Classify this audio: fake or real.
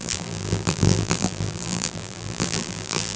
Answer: fake